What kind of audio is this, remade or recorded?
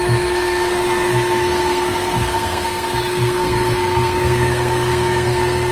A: remade